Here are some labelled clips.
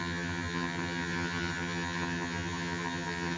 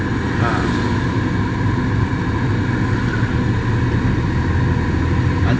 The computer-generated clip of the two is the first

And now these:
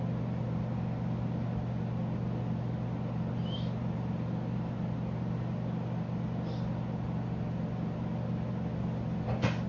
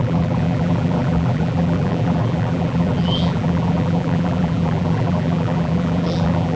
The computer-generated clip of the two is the second